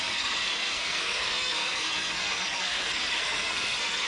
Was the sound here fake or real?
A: fake